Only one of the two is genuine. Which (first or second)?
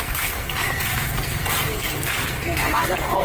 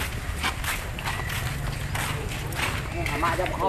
second